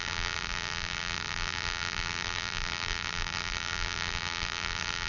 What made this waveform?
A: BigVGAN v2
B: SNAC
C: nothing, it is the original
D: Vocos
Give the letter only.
A